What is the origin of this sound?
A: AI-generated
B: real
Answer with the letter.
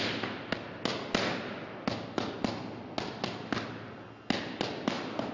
B